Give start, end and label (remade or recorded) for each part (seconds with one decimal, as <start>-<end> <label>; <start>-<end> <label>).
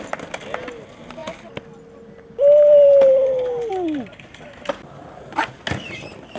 0.0-6.4 recorded